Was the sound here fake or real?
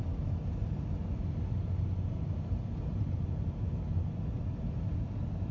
real